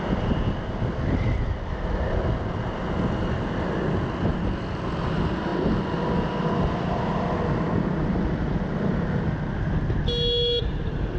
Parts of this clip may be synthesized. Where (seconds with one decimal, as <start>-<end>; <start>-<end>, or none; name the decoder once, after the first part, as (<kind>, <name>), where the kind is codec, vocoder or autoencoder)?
none